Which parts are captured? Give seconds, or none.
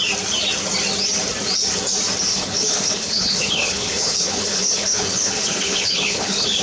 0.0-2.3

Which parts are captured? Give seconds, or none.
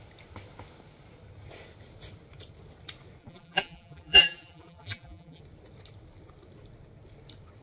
0.0-3.2; 5.4-7.6